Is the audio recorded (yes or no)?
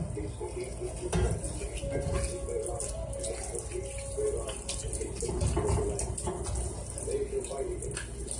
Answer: yes